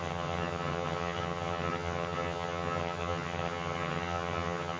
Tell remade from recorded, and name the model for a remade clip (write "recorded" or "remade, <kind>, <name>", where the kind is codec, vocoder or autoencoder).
remade, vocoder, HiFi-GAN